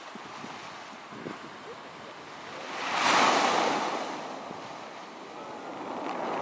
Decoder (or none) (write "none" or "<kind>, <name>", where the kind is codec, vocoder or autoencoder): none